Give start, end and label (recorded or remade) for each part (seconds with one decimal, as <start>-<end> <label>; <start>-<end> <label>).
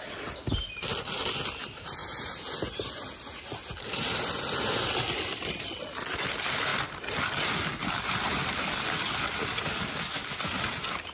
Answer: 0.0-11.1 recorded